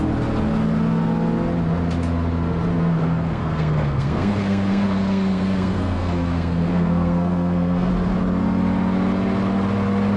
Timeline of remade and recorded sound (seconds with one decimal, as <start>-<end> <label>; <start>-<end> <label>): 0.0-2.7 recorded; 2.7-7.9 remade; 7.9-10.2 recorded